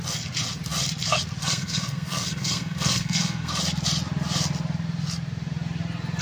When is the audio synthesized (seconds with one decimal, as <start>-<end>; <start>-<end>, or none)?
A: 1.4-3.6